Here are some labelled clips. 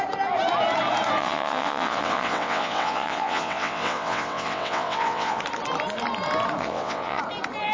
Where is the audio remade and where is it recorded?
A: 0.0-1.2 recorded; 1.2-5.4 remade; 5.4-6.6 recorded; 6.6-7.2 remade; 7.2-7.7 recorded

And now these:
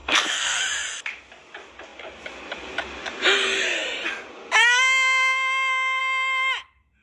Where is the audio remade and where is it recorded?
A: 0.0-0.6 remade; 0.6-7.0 recorded

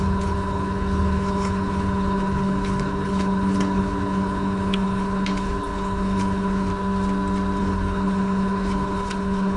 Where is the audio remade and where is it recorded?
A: 0.0-6.7 remade; 6.7-7.6 recorded; 7.6-9.6 remade

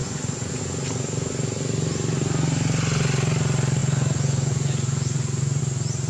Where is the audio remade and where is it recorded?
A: 0.0-0.6 remade; 0.6-3.8 recorded; 3.8-5.6 remade; 5.6-6.1 recorded

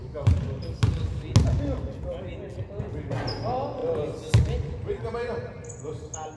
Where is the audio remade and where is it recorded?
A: 0.0-6.4 recorded

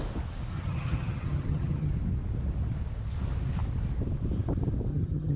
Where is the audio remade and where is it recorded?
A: 0.0-0.5 recorded; 0.5-1.9 remade; 1.9-4.9 recorded; 4.9-5.4 remade

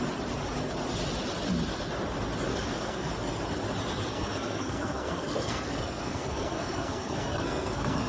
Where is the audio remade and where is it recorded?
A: 0.0-2.5 recorded; 2.5-3.1 remade; 3.1-4.1 recorded; 4.1-8.1 remade